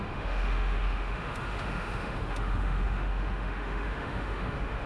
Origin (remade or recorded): remade